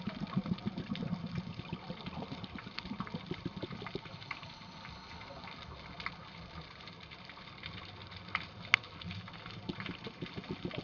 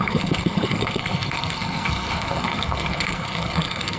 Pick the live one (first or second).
first